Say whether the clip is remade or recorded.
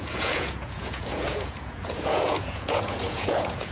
remade